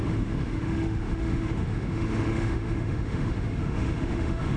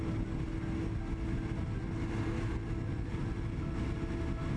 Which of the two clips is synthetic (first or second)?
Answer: first